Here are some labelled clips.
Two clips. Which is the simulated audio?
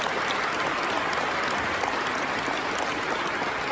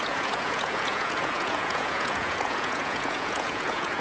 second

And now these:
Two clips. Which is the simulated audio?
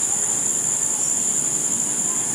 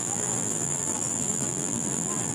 second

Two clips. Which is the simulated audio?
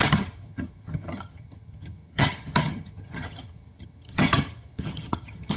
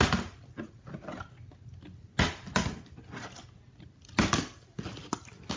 first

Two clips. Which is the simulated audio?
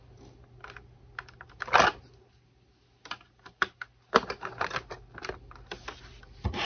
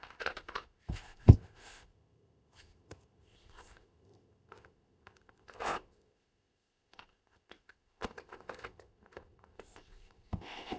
second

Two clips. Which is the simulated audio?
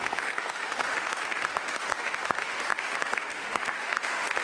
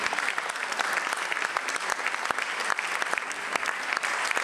first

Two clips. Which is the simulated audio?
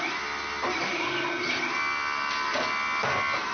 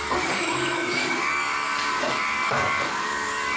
second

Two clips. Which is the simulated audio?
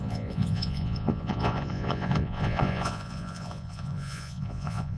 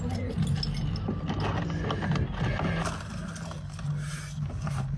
first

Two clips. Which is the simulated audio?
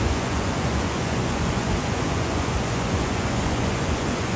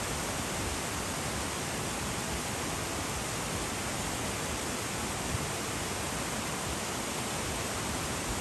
first